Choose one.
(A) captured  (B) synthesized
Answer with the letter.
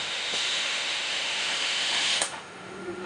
B